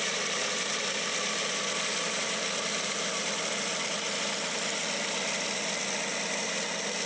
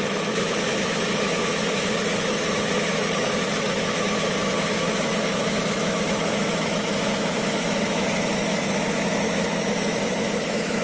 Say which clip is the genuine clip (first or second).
first